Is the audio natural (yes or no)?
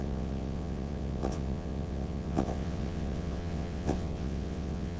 no